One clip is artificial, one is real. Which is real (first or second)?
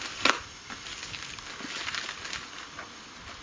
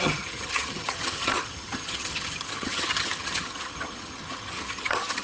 first